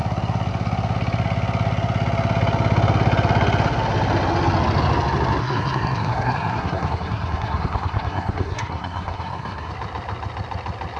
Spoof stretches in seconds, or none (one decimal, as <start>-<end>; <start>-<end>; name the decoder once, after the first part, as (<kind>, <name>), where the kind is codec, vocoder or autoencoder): 5.4-9.7 (codec, SNAC)